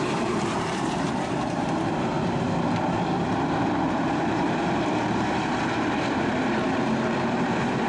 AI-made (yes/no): yes